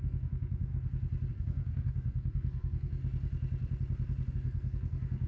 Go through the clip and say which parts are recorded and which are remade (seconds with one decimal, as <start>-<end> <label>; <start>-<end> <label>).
0.0-0.7 remade; 0.7-1.3 recorded; 1.3-3.0 remade; 3.0-4.3 recorded; 4.3-5.3 remade